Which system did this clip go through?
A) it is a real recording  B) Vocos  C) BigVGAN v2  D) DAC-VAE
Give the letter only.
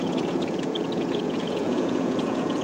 B